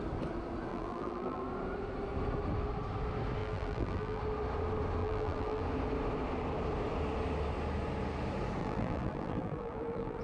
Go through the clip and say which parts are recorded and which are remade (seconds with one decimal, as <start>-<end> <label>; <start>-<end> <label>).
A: 0.0-0.7 recorded; 0.7-1.4 remade; 1.4-3.4 recorded; 3.4-4.2 remade; 4.2-5.0 recorded; 5.0-5.6 remade; 5.6-8.6 recorded; 8.6-10.2 remade